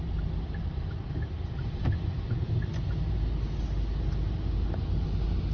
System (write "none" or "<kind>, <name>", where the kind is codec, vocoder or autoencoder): none